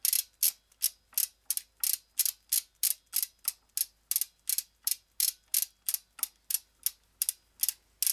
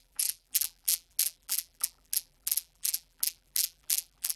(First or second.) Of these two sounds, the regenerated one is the second